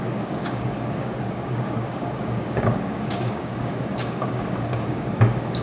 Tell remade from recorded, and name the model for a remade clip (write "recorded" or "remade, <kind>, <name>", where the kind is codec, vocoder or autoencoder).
remade, codec, DAC